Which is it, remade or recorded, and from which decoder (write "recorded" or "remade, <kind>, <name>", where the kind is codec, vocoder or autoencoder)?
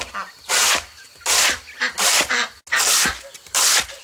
recorded